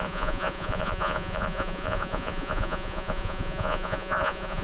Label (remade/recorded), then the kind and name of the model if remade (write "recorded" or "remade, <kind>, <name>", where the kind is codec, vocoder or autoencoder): remade, vocoder, Vocos